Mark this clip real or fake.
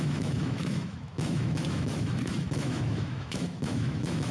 fake